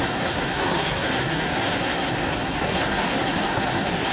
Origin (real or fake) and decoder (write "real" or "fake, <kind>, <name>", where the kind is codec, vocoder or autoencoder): fake, codec, SNAC